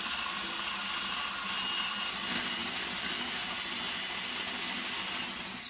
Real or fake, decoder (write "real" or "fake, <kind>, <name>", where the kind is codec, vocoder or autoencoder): real